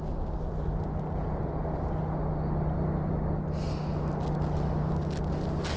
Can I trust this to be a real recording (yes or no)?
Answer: yes